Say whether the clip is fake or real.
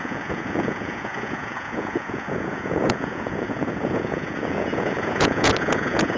fake